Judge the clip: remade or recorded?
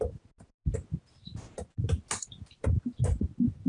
recorded